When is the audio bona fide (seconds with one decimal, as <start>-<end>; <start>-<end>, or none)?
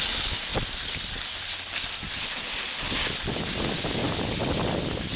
0.0-5.2